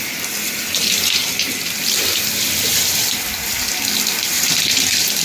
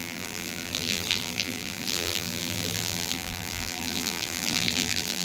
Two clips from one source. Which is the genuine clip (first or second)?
first